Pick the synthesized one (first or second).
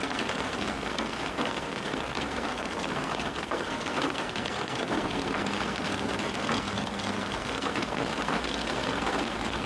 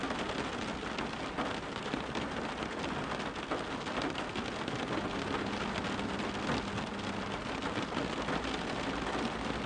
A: first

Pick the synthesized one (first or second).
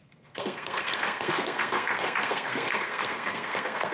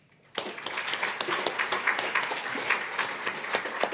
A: first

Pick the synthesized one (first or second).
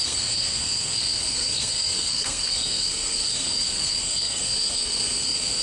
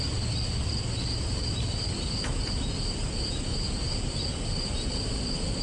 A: first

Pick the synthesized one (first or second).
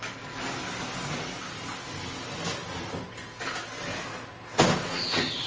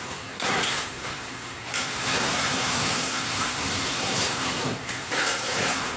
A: second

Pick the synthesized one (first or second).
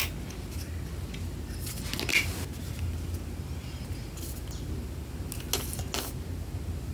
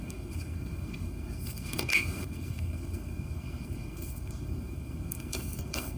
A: second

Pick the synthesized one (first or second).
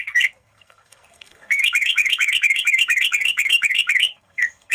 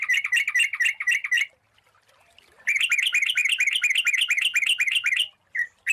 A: first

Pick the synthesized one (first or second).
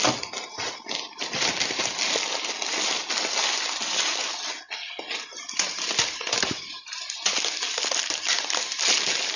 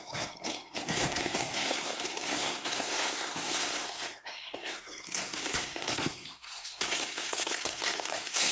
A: second